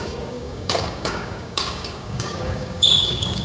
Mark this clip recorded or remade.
remade